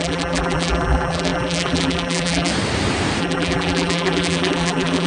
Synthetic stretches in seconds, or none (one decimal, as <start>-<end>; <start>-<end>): 0.0-2.5; 3.2-5.1